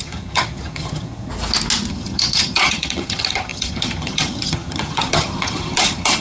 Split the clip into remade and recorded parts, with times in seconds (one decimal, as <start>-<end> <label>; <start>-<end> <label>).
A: 0.0-1.3 remade; 1.3-1.9 recorded; 1.9-6.2 remade